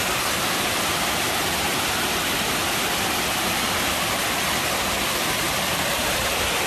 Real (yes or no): no